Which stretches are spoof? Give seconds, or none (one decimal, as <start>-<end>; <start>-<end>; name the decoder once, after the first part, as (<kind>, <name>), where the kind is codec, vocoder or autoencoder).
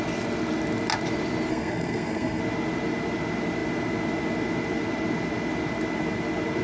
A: 1.5-2.4 (codec, SNAC)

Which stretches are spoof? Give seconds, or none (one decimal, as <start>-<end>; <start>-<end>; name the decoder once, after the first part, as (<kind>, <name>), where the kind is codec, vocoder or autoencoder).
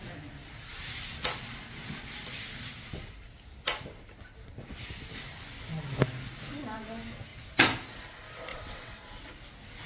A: 8.5-9.2 (vocoder, WaveNeXt)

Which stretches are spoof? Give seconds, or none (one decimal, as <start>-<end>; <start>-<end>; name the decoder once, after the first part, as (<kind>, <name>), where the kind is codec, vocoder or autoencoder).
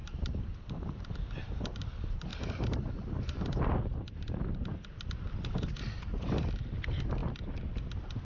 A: 0.0-1.1 (vocoder, BigVGAN v2)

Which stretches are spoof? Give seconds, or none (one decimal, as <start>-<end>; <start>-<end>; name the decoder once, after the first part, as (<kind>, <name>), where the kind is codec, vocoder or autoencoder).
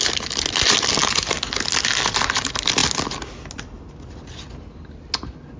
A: none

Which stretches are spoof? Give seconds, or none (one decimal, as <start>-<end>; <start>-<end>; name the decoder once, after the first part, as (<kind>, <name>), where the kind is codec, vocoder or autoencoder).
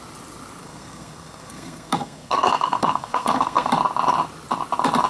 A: 0.6-3.7 (codec, SNAC)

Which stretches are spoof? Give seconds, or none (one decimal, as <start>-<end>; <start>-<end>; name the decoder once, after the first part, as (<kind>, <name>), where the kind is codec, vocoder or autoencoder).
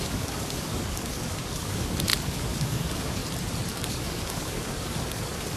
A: 0.0-3.2 (codec, DAC); 3.7-5.6